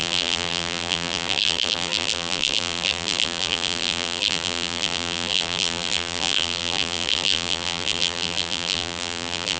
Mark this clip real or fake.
fake